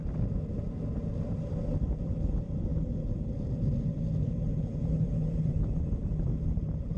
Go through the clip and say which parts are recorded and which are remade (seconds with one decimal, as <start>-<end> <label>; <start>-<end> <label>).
0.0-7.0 recorded